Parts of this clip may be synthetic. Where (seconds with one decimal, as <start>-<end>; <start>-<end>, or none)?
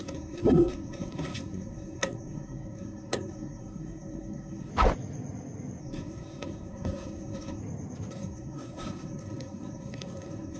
0.0-4.7; 5.8-7.6; 8.1-10.6